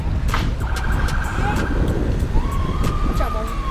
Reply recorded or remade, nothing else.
recorded